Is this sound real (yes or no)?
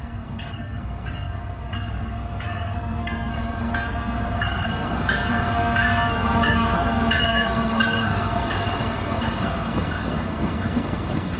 no